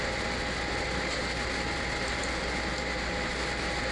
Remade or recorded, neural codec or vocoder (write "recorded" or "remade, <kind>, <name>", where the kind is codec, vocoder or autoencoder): recorded